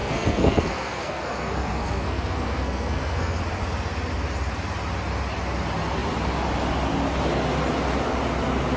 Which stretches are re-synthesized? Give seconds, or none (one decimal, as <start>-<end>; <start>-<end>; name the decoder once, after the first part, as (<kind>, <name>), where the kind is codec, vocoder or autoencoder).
0.0-3.4 (codec, SNAC)